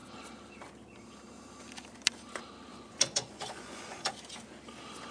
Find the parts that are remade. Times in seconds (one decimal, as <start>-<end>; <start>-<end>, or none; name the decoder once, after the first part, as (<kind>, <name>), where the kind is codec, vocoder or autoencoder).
2.7-4.1 (vocoder, Vocos)